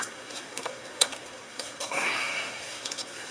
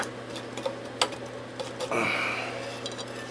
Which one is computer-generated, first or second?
first